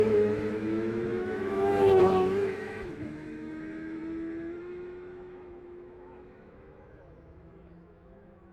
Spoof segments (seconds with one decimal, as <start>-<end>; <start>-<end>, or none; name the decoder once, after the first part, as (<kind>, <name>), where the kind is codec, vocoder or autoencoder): 0.0-4.0 (autoencoder, DAC-VAE); 4.6-8.5